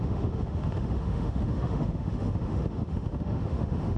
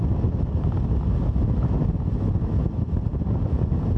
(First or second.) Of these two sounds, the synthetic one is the first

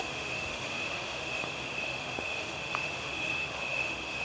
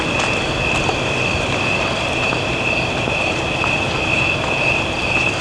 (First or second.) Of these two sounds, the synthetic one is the first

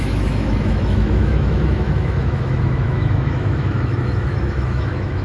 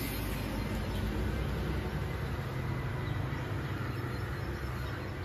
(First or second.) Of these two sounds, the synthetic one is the first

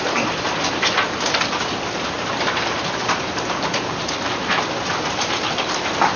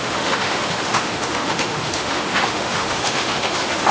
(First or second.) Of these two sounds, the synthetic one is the second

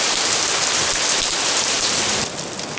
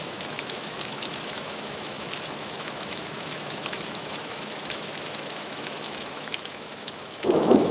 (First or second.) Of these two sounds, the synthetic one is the second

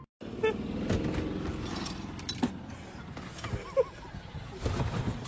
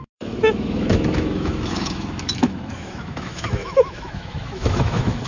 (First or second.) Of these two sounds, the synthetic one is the second